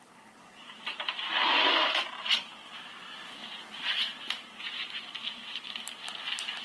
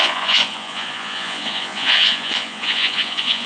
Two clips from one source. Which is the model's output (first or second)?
second